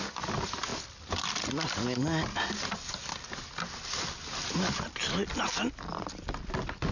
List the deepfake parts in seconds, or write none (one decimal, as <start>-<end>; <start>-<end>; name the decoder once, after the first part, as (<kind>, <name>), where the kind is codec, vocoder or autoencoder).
none